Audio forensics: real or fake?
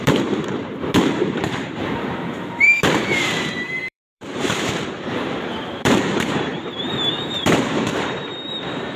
fake